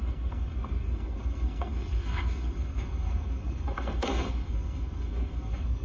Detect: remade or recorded remade